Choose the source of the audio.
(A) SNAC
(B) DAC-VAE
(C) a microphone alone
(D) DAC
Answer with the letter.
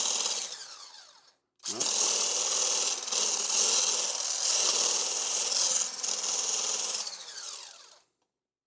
C